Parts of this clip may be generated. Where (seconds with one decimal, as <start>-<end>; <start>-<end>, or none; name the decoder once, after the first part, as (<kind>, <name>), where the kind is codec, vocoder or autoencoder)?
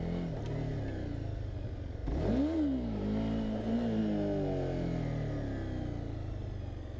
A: none